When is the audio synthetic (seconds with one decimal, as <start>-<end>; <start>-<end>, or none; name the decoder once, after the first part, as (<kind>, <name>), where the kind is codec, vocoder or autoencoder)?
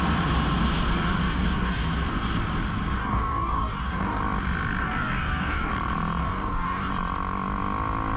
1.2-1.9 (codec, DAC); 3.0-4.2; 4.8-5.7; 6.2-6.9